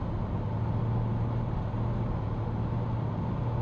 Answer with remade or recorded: recorded